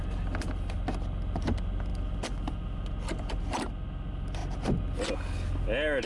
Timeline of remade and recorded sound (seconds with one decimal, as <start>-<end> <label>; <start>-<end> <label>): 0.0-6.1 recorded